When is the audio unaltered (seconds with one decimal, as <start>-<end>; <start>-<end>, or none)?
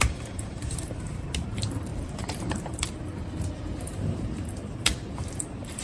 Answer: none